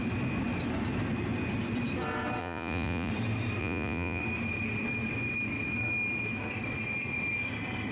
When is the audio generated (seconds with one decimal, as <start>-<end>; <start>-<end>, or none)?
2.4-3.1; 3.6-4.2